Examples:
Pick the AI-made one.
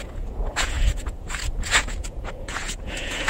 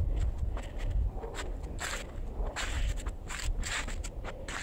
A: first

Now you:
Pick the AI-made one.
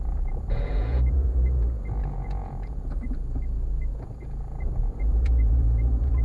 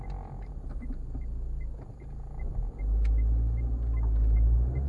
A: first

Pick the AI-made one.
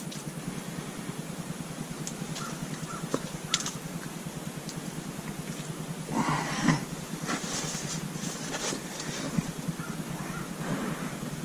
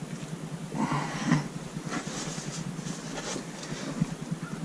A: first